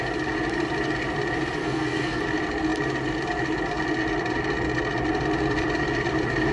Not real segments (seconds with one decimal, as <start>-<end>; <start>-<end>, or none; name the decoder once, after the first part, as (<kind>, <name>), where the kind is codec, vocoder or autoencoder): 1.6-2.2 (codec, SNAC)